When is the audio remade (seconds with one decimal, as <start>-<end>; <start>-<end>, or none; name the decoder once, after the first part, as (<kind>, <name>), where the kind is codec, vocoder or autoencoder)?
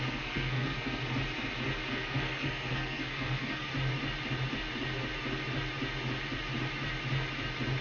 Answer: 0.0-1.0 (codec, SNAC); 1.9-3.7